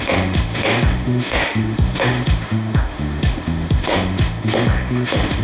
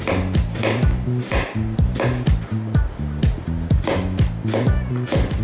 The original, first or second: second